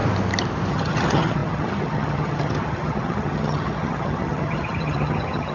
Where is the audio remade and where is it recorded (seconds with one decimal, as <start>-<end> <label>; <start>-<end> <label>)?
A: 0.0-0.7 recorded; 0.7-5.5 remade